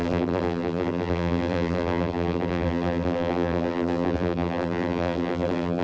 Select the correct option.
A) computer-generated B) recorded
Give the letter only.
A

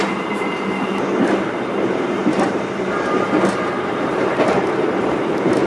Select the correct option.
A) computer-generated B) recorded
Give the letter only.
A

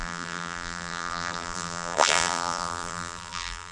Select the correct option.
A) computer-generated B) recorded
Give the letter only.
A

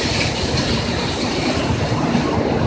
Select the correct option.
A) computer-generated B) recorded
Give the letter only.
A